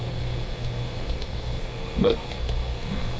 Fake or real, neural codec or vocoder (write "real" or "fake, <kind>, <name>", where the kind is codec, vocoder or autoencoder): fake, codec, SNAC